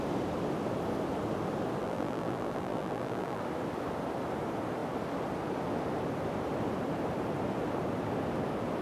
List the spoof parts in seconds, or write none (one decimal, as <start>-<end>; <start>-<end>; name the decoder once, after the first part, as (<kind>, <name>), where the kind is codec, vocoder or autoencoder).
1.8-3.4 (vocoder, BigVGAN v2)